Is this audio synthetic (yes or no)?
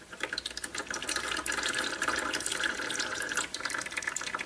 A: yes